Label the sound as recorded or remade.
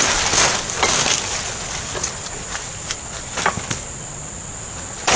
recorded